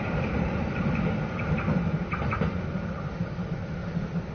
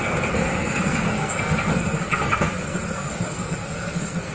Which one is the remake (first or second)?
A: second